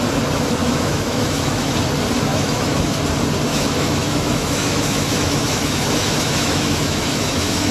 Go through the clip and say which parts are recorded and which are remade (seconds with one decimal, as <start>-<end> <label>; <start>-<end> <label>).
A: 0.0-0.6 recorded; 0.6-1.7 remade; 1.7-2.3 recorded; 2.3-3.0 remade; 3.0-3.5 recorded; 3.5-7.7 remade